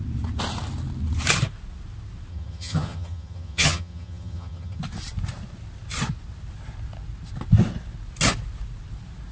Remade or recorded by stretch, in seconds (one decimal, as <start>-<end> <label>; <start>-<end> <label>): 0.0-2.3 recorded; 2.3-4.8 remade; 4.8-9.3 recorded